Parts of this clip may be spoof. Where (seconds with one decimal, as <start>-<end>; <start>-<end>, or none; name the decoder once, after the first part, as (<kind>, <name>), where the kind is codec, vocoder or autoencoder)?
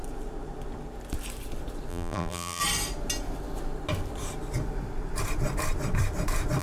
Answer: 1.9-2.6 (vocoder, BigVGAN v2)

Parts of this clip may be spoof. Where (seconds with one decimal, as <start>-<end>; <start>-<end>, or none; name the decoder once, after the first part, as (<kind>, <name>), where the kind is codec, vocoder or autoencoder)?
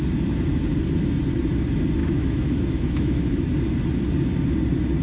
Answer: 2.0-3.5 (autoencoder, DAC-VAE)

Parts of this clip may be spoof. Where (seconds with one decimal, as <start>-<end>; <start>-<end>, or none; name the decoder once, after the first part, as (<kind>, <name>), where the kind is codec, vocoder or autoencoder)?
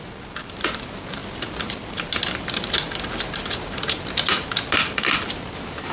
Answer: none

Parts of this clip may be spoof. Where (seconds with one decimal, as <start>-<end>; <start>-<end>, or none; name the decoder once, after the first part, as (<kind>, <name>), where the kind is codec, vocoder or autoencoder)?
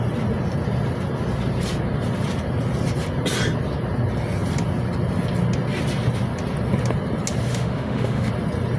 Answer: 7.5-8.3 (autoencoder, DAC-VAE)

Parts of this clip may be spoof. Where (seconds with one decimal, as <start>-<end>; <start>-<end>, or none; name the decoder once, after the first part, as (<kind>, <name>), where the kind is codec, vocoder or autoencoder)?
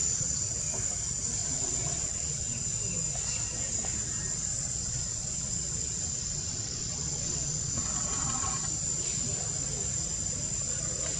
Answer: 0.0-0.6 (vocoder, WaveNeXt); 1.4-2.6; 4.5-8.5